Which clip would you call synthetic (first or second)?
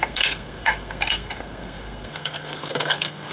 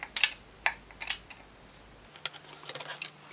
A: first